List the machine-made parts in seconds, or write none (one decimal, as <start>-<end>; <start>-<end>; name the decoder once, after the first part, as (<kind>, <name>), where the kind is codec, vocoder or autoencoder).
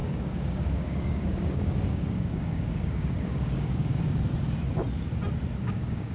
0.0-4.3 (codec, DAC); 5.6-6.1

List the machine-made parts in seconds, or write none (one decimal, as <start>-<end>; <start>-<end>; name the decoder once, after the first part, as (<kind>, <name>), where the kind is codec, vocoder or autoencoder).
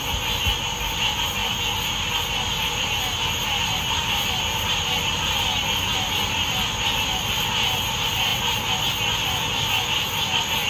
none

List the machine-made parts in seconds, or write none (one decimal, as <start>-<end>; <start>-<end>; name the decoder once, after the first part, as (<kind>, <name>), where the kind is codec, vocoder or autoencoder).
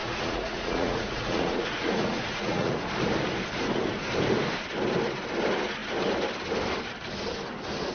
0.0-2.7 (vocoder, Vocos)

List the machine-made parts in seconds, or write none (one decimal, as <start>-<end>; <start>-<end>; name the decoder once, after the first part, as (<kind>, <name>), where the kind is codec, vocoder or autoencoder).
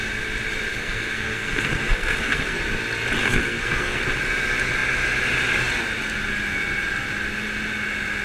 0.7-2.6 (codec, SNAC); 3.2-4.0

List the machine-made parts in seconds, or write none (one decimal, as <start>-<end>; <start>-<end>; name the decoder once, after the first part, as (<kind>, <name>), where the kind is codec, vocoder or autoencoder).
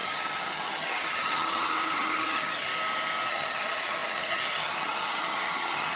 0.0-2.7 (vocoder, HiFi-GAN); 3.3-6.0